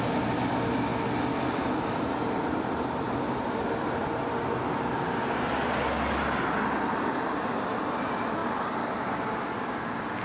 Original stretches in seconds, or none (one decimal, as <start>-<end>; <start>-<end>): 0.0-0.9; 4.3-8.4; 9.2-10.2